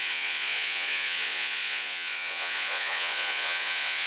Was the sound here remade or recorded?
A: remade